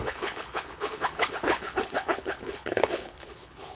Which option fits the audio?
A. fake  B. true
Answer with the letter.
A